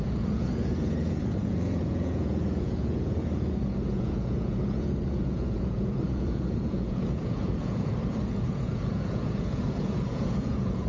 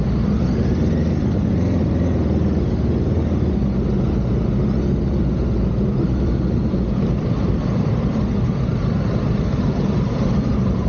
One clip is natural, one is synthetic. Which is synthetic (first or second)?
first